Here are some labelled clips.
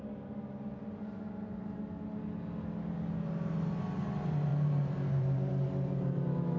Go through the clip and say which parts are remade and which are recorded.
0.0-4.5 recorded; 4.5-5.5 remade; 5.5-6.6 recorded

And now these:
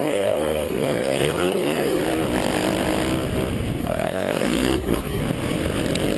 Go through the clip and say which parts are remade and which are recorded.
0.0-2.0 remade; 2.0-3.8 recorded; 3.8-5.2 remade; 5.2-6.2 recorded

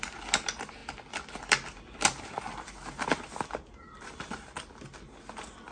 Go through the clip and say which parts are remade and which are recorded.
0.0-5.7 recorded

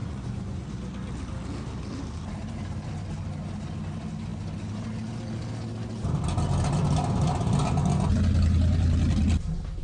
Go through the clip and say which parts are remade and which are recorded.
0.0-0.7 remade; 0.7-9.8 recorded

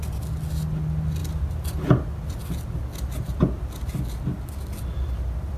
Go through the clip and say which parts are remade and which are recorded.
0.0-5.6 recorded

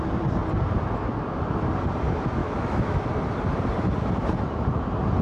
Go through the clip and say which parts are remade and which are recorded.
0.0-2.4 recorded; 2.4-3.1 remade; 3.1-5.2 recorded

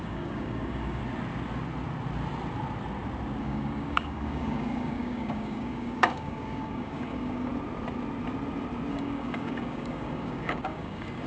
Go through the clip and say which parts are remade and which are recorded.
0.0-1.0 remade; 1.0-3.4 recorded; 3.4-7.5 remade; 7.5-8.9 recorded; 8.9-11.3 remade

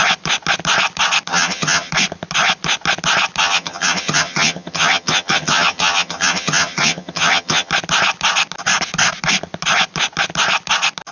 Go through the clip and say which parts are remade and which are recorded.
0.0-1.3 recorded; 1.3-1.9 remade; 1.9-3.4 recorded; 3.4-7.7 remade; 7.7-11.1 recorded